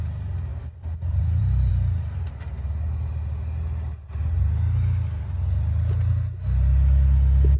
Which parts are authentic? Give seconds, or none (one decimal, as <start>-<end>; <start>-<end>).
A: 0.0-0.5; 1.7-7.6

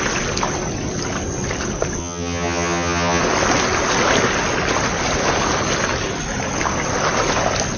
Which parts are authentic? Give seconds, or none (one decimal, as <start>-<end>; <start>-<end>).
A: 0.0-2.0; 3.2-7.8

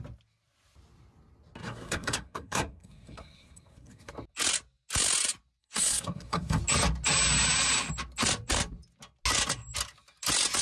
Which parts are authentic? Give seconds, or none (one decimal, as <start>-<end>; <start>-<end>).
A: 0.0-1.6; 4.1-5.6; 6.6-10.6

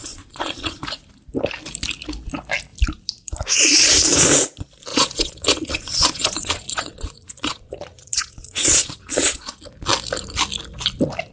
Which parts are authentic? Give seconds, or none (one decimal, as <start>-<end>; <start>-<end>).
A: 0.8-4.9; 9.6-11.3